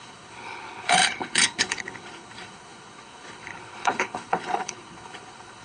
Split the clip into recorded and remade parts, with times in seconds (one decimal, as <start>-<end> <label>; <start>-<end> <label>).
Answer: 0.0-5.6 remade